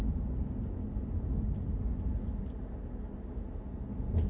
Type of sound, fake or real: real